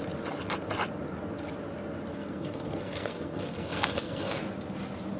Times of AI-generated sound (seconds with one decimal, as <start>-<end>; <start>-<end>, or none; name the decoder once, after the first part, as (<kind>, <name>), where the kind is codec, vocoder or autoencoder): 2.1-4.4 (codec, SNAC)